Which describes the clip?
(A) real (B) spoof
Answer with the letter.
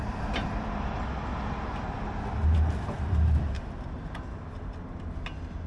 A